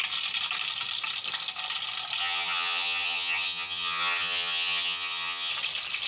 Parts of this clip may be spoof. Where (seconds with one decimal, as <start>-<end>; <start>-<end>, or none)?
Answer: 2.2-5.5